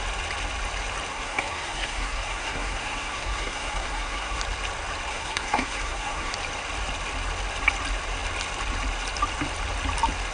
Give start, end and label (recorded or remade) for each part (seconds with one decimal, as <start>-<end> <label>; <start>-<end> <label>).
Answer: 0.0-1.1 recorded; 1.1-4.4 remade; 4.4-5.1 recorded; 5.1-6.3 remade; 6.3-10.3 recorded

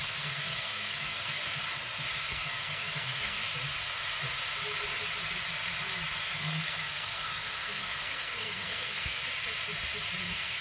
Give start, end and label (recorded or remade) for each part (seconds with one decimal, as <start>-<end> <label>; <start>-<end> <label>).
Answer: 0.0-1.6 remade; 1.6-2.2 recorded; 2.2-3.4 remade; 3.4-6.2 recorded; 6.2-9.2 remade; 9.2-10.2 recorded; 10.2-10.6 remade

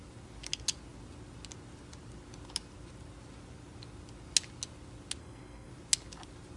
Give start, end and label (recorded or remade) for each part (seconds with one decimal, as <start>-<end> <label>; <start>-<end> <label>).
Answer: 0.0-5.2 recorded; 5.2-5.7 remade; 5.7-6.6 recorded